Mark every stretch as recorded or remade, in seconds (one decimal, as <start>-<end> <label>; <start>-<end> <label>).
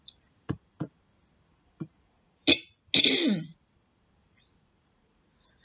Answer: 0.0-0.6 remade; 0.6-1.5 recorded; 1.5-2.4 remade; 2.4-4.3 recorded; 4.3-5.6 remade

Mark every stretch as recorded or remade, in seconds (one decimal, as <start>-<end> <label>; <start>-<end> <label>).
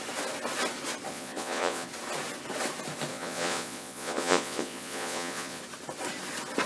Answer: 0.0-1.1 recorded; 1.1-1.9 remade; 1.9-3.1 recorded; 3.1-5.6 remade; 5.6-6.7 recorded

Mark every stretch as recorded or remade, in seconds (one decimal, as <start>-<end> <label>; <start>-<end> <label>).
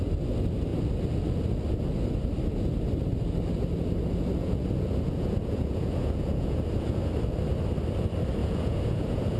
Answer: 0.0-4.4 recorded; 4.4-7.1 remade; 7.1-8.4 recorded; 8.4-9.4 remade